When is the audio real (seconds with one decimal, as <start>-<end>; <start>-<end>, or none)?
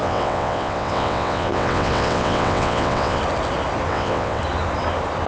3.2-3.9; 4.4-5.3